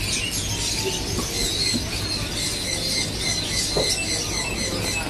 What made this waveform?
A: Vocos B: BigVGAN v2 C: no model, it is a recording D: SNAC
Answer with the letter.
C